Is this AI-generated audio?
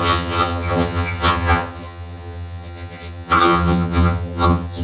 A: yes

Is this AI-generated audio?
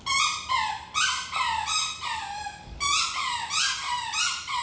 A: no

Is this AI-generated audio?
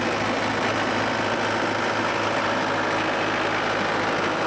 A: no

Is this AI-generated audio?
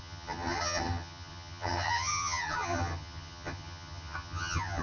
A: yes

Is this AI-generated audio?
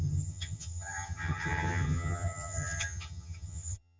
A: yes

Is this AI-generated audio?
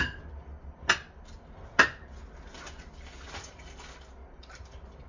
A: no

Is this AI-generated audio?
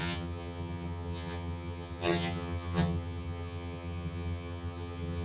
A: yes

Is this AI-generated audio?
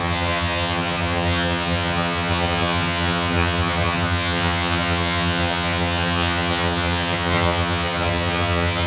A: yes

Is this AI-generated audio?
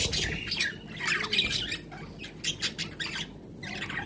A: no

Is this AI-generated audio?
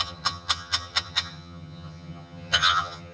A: yes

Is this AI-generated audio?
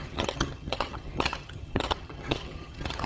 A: yes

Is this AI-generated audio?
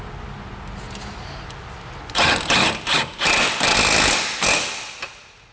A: no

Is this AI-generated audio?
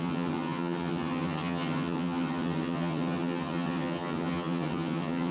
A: yes